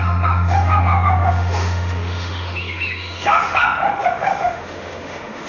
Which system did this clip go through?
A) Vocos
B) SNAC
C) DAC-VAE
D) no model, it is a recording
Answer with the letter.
C